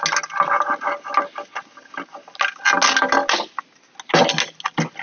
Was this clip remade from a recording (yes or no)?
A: no